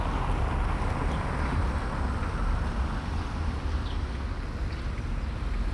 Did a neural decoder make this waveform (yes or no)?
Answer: no